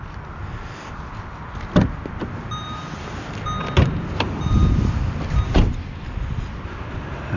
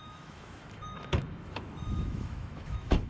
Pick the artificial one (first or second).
second